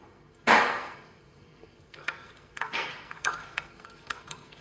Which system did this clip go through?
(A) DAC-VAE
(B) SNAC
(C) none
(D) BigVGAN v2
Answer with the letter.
B